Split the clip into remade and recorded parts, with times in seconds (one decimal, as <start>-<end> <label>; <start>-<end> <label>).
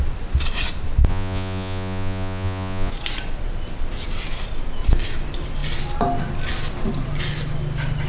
0.0-1.1 recorded; 1.1-2.9 remade; 2.9-8.1 recorded